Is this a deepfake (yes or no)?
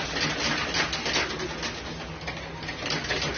no